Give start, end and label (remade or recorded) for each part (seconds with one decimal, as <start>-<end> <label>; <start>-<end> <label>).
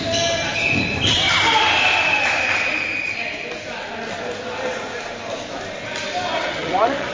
0.0-6.4 recorded; 6.4-7.1 remade